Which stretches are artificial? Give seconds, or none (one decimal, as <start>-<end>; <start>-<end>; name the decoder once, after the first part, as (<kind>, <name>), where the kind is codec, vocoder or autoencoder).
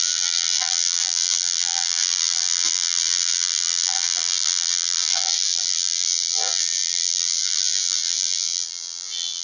0.0-9.4 (vocoder, BigVGAN v2)